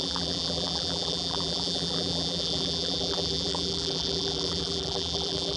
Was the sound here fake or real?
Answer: fake